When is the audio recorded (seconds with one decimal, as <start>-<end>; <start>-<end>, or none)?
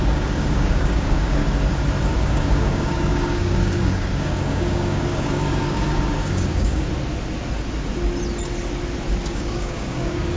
1.4-2.0; 6.9-9.3